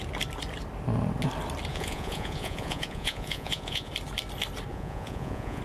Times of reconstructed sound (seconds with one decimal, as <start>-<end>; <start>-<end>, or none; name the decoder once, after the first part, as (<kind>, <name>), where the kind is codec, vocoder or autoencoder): 1.7-3.9 (vocoder, Vocos); 4.7-5.6